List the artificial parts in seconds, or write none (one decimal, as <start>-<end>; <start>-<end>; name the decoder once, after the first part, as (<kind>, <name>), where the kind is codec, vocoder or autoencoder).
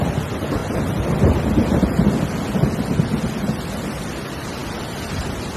0.0-0.6 (vocoder, BigVGAN v2); 4.0-5.6